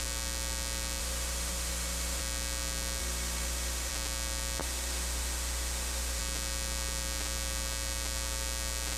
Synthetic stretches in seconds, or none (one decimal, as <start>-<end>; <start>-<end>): 1.0-2.2; 3.0-3.9; 4.6-6.2